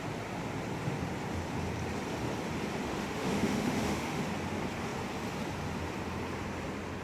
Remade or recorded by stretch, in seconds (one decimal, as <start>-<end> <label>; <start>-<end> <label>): 0.0-2.8 recorded; 2.8-4.2 remade; 4.2-7.0 recorded